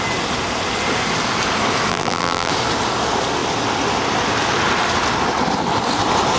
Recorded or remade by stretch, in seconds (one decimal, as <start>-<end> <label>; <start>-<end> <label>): 0.0-1.9 recorded; 1.9-2.5 remade; 2.5-6.4 recorded